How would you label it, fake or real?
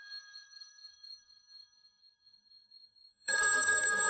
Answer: fake